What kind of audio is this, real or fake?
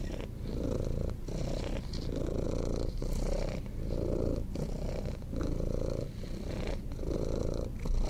real